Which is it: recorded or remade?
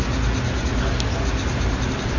recorded